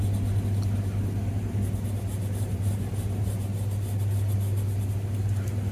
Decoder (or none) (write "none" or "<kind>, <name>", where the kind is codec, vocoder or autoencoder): none